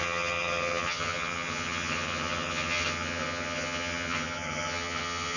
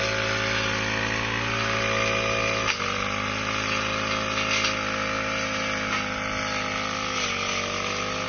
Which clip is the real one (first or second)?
second